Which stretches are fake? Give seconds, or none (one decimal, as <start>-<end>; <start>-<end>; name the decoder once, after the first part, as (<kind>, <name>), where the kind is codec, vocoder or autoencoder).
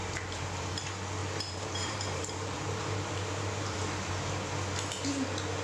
0.0-0.7 (vocoder, BigVGAN v2); 1.2-4.1